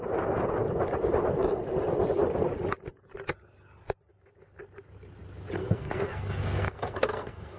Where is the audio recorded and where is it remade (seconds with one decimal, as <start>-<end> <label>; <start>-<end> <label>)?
0.0-5.6 recorded; 5.6-7.6 remade